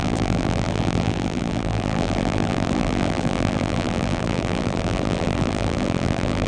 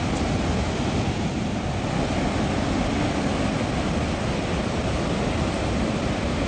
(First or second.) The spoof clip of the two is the first